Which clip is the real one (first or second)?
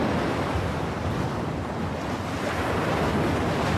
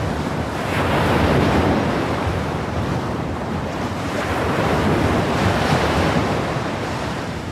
first